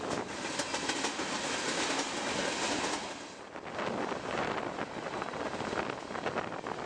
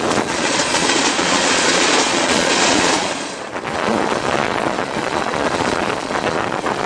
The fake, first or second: second